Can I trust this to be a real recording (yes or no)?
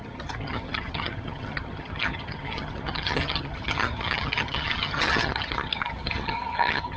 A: no